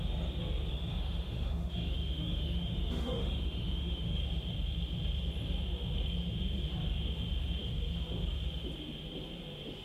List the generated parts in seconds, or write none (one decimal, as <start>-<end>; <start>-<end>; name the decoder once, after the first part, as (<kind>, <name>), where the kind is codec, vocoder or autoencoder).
0.7-4.2 (autoencoder, DAC-VAE)